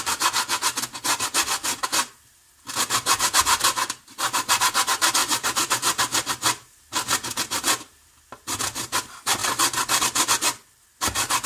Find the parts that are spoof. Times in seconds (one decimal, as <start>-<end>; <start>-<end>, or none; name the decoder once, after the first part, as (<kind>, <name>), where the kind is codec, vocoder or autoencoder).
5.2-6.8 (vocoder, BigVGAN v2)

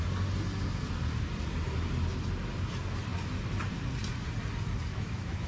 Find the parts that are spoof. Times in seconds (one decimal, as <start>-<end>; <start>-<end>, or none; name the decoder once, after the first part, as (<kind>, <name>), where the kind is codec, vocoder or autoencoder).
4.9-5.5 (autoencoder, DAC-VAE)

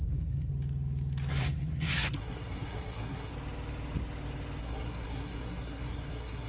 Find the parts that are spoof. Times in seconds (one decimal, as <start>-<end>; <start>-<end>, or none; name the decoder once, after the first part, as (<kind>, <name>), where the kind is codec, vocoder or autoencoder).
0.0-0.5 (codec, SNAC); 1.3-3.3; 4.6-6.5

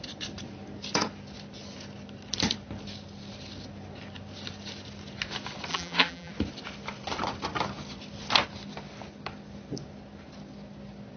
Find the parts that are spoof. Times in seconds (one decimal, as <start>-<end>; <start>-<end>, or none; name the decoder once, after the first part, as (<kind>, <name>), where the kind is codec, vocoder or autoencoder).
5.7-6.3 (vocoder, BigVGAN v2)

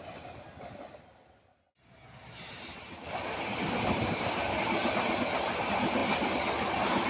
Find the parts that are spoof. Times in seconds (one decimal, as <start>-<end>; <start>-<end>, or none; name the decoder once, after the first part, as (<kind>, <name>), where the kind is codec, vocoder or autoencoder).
none

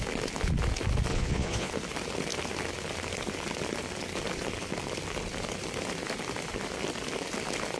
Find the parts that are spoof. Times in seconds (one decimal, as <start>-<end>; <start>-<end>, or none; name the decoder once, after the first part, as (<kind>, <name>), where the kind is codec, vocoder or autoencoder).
1.1-1.7 (vocoder, Vocos)